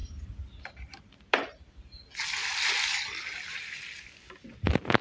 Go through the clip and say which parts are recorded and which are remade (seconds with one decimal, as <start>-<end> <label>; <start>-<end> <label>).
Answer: 0.0-5.0 recorded